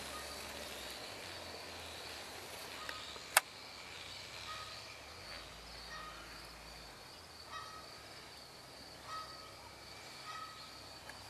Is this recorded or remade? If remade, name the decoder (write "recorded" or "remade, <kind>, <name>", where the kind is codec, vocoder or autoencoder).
recorded